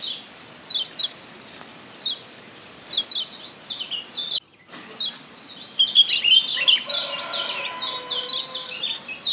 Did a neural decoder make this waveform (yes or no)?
no